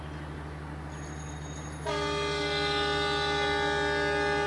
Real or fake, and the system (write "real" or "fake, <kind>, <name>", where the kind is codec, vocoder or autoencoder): real